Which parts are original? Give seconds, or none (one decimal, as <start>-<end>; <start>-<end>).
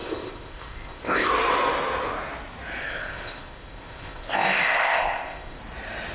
1.3-2.8; 5.6-6.1